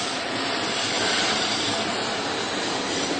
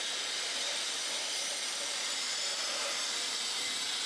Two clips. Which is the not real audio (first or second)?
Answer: first